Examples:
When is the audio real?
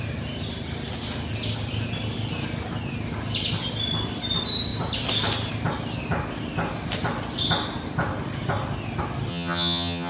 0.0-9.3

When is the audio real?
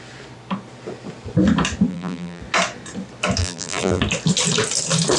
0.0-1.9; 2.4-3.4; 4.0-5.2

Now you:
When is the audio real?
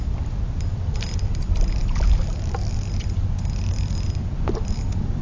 0.0-5.2